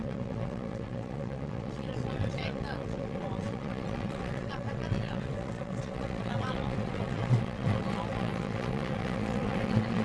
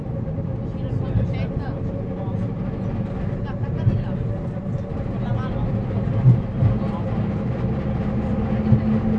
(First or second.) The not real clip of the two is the first